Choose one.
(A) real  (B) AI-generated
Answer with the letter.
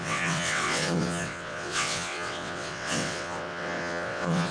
B